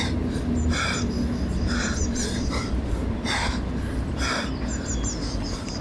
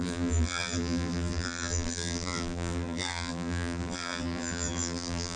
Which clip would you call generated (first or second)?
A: second